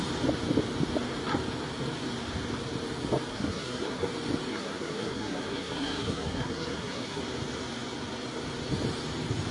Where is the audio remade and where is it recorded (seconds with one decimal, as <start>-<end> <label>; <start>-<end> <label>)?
0.0-3.3 recorded; 3.3-4.1 remade; 4.1-4.5 recorded; 4.5-7.2 remade; 7.2-9.5 recorded